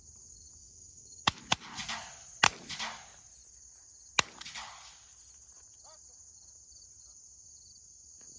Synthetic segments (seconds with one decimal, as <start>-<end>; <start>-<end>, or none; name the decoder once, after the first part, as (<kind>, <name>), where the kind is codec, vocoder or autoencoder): 0.6-1.4 (autoencoder, DAC-VAE)